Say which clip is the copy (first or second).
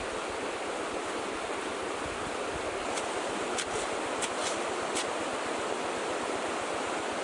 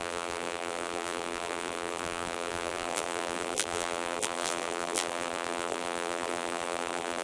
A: second